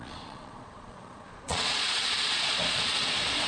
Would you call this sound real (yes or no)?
no